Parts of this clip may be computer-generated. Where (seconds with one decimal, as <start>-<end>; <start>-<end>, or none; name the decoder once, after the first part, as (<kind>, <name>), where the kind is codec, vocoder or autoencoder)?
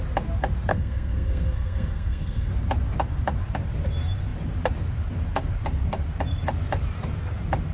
0.7-2.5 (codec, SNAC)